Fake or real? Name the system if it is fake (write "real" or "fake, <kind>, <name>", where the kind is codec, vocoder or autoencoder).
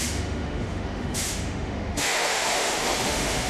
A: fake, autoencoder, DAC-VAE